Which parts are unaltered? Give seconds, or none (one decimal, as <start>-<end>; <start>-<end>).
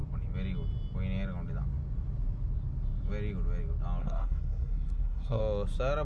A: 0.0-4.0; 5.4-6.0